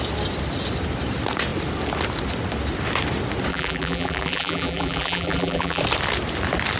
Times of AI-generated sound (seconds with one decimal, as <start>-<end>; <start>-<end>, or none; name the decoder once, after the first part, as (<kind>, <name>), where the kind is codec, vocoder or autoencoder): 3.5-5.8 (vocoder, BigVGAN v2)